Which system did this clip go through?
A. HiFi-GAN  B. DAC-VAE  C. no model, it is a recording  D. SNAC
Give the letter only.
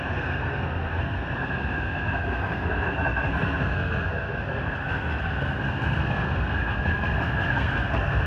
D